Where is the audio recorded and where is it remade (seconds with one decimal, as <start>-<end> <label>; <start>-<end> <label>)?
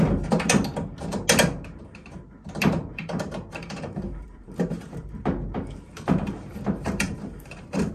0.0-2.9 recorded; 2.9-7.9 remade